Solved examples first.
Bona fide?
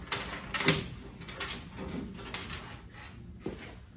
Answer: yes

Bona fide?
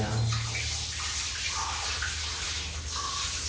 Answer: yes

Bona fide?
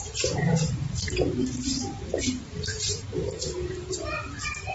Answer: no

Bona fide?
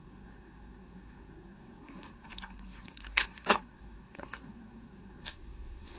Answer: no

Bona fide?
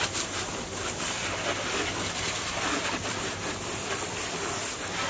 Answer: yes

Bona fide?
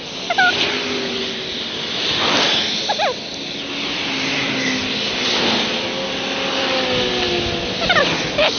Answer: yes